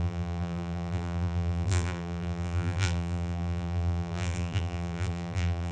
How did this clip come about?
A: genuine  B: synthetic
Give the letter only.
B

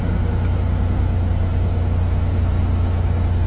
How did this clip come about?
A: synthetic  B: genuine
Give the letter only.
B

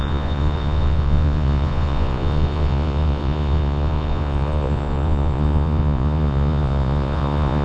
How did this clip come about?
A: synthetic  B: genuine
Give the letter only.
A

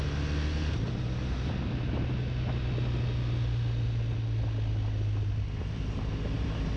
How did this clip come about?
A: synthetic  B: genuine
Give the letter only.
B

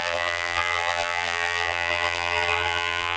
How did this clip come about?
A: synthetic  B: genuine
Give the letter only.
A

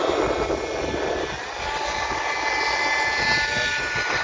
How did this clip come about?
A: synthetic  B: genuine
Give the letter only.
B